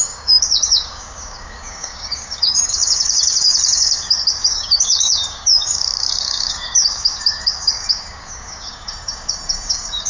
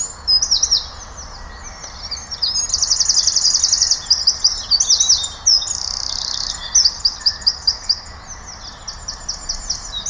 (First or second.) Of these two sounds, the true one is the second